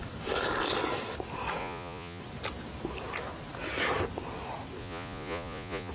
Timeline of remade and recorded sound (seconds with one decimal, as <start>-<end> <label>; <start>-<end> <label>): 0.0-1.6 recorded; 1.6-2.2 remade; 2.2-4.8 recorded; 4.8-5.9 remade